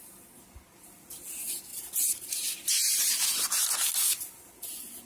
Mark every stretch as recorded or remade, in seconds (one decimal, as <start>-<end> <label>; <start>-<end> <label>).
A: 0.0-5.1 recorded